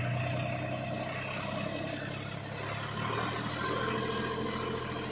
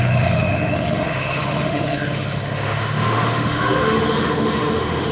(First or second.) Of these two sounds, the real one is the first